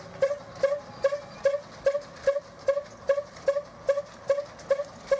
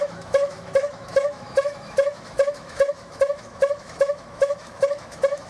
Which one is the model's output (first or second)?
second